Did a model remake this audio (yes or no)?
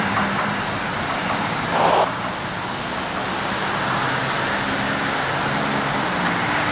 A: no